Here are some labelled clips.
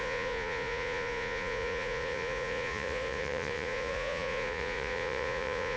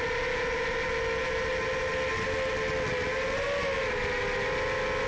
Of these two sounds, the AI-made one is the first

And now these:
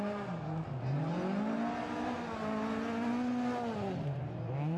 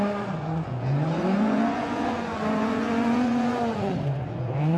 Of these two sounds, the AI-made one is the second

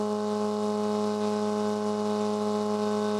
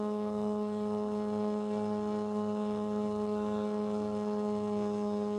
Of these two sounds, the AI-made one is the second